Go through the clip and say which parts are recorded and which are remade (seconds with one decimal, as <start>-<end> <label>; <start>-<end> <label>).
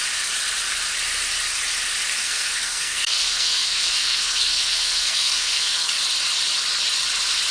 0.0-2.2 recorded; 2.2-5.9 remade; 5.9-7.5 recorded